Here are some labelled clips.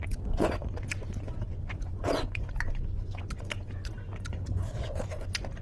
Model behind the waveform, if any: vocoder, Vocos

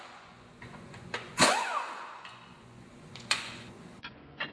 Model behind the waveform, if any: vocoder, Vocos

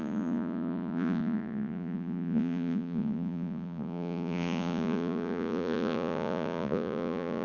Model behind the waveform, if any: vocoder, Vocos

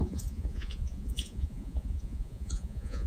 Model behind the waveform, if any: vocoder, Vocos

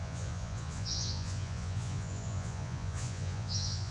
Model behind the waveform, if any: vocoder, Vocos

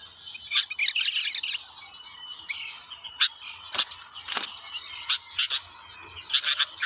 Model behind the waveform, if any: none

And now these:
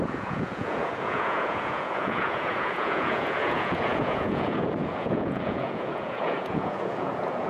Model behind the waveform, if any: vocoder, Vocos